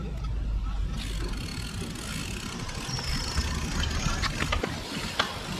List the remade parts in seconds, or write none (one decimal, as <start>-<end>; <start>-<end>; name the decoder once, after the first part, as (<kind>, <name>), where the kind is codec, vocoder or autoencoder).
none